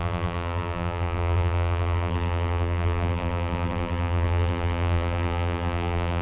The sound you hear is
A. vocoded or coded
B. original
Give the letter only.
A